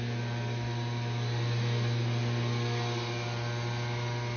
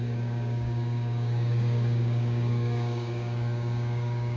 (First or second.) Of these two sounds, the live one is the first